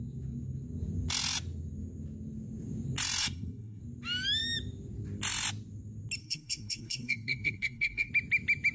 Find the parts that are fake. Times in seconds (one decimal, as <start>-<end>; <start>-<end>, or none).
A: 3.2-3.8; 6.2-8.1